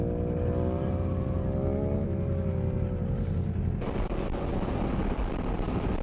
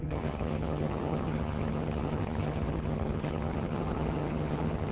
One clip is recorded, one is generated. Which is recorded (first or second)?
first